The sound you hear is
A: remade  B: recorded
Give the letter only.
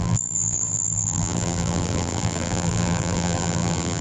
A